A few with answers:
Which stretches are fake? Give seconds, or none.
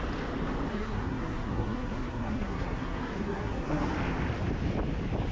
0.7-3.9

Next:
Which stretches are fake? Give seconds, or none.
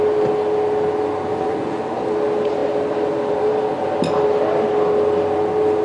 1.3-1.8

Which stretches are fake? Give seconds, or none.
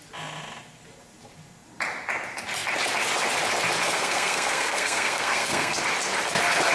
3.8-5.8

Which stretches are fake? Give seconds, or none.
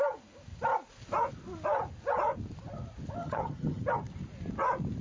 3.2-3.8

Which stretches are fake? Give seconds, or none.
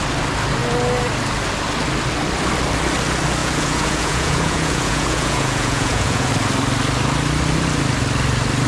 3.4-6.3